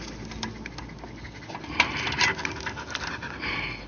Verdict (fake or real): real